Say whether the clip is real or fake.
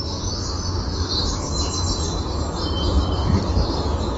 real